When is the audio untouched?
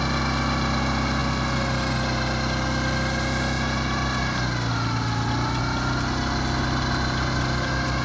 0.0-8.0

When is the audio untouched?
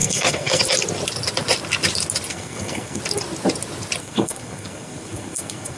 0.6-2.3; 3.0-4.0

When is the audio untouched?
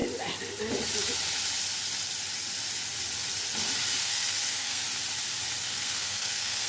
0.0-4.0; 4.8-5.6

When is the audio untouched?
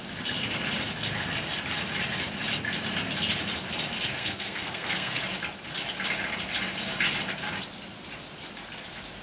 0.0-4.2; 5.2-9.2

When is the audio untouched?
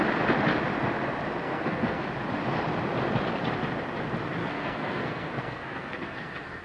0.0-1.4; 2.0-4.4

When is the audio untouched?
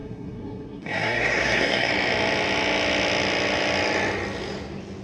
1.9-5.0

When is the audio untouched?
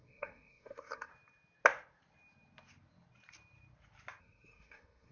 1.1-4.2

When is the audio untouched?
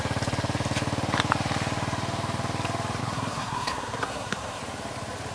0.0-3.0; 4.6-5.3